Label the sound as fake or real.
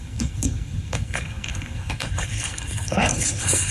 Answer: fake